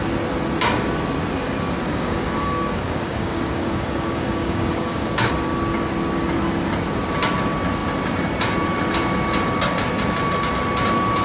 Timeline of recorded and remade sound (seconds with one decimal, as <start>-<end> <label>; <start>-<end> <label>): 0.0-1.9 recorded; 1.9-5.3 remade; 5.3-11.2 recorded